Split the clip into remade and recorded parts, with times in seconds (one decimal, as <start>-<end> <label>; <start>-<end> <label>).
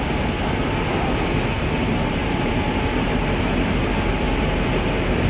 0.0-1.5 recorded; 1.5-3.1 remade; 3.1-5.3 recorded